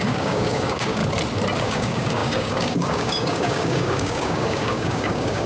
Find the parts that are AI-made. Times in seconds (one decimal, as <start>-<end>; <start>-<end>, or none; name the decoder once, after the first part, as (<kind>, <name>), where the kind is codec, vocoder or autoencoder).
0.0-1.0 (codec, DAC); 1.6-5.5